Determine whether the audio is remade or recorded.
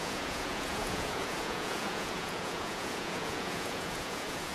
remade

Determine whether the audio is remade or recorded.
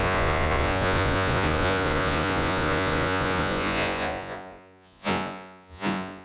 remade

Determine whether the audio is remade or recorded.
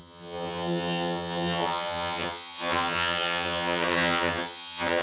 remade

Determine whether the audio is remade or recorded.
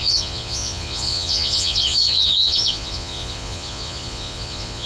remade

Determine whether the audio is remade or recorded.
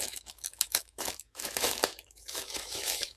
remade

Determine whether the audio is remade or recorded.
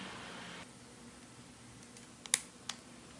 recorded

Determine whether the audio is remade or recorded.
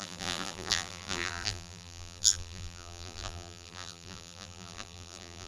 remade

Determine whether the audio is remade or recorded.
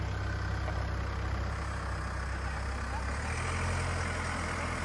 recorded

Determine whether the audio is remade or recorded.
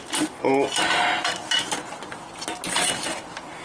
recorded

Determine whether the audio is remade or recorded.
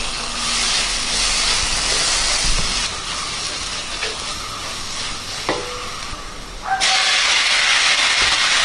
recorded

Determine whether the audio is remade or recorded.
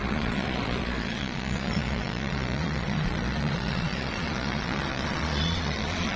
remade